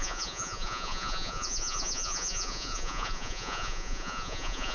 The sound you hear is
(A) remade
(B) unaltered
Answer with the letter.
A